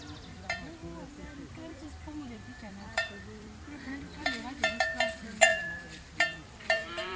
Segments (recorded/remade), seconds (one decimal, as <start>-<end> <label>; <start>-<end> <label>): 0.0-7.2 remade